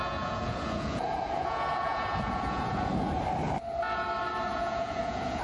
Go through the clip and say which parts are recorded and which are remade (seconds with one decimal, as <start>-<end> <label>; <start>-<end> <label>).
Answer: 0.0-3.1 remade; 3.1-4.5 recorded; 4.5-5.4 remade